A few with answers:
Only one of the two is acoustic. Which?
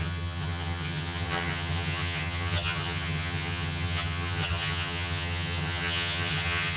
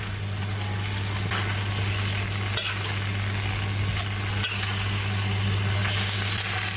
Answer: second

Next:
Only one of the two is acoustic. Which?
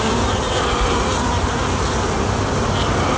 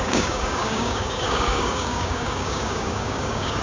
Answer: first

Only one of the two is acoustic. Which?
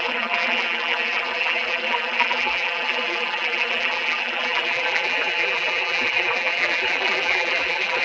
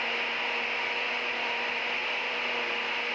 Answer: second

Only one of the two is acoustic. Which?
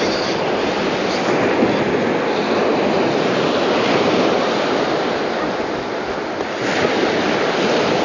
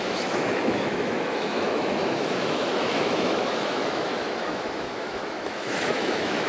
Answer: first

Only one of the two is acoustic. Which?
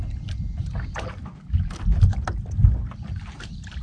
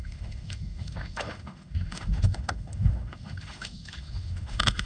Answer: first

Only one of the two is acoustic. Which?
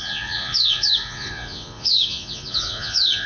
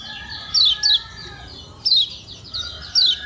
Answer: second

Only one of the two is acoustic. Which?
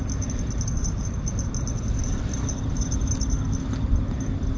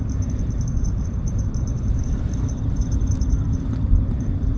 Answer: first